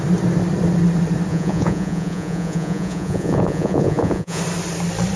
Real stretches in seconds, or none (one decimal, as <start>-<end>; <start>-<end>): 0.0-1.3; 4.4-5.2